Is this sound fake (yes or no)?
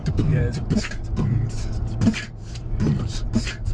yes